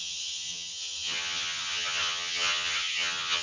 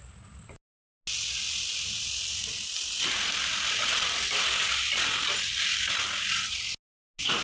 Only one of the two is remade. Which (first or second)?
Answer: first